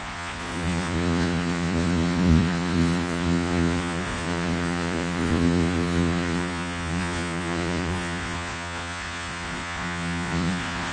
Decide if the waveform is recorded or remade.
remade